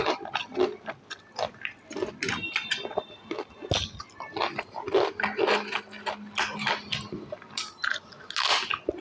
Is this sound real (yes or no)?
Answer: yes